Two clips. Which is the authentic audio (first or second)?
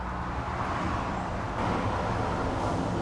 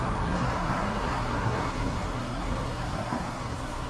first